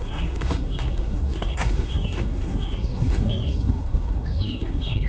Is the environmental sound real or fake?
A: fake